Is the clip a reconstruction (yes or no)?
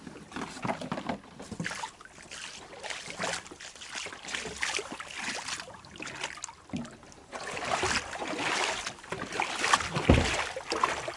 no